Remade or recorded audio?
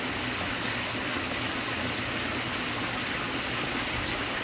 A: recorded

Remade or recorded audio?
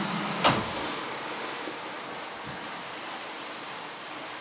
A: recorded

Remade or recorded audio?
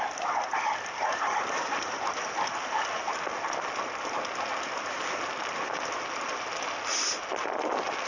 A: recorded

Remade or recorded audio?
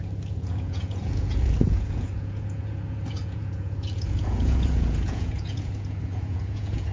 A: remade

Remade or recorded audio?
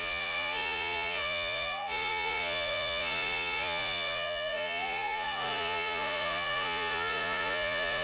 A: remade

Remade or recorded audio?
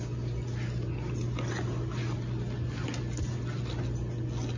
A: recorded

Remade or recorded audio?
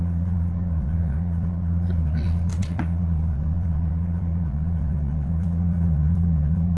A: remade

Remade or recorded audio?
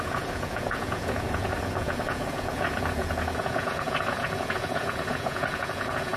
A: remade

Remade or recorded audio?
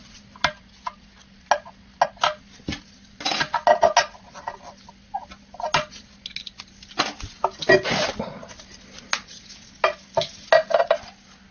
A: recorded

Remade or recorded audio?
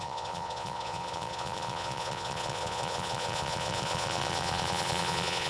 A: remade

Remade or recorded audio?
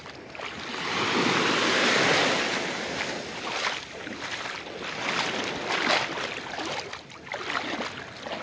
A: recorded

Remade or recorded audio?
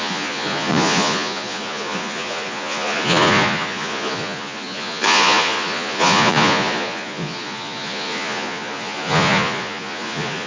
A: remade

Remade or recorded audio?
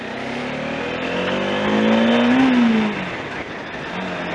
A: recorded